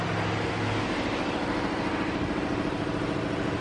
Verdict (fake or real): real